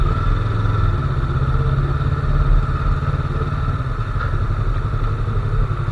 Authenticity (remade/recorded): recorded